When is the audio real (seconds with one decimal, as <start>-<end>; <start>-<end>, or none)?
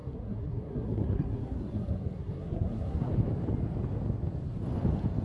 3.1-5.2